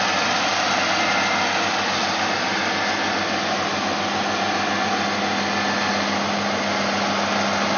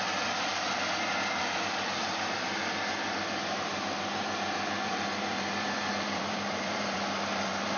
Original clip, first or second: first